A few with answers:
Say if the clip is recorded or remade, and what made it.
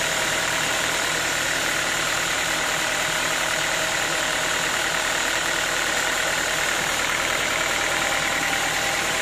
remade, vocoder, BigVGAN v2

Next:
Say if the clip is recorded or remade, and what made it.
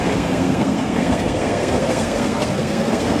remade, codec, SNAC